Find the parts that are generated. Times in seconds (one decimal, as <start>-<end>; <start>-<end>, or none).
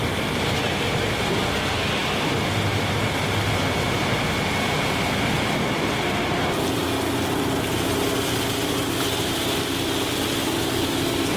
none